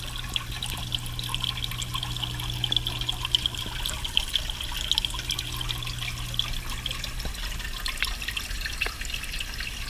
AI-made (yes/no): no